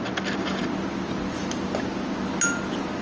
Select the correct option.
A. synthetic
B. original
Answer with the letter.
B